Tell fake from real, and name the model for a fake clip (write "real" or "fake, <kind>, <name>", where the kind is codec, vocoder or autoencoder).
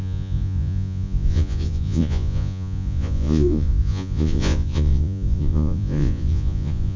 fake, vocoder, Vocos